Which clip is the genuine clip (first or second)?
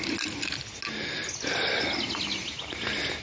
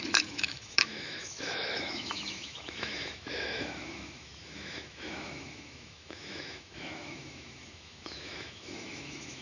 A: first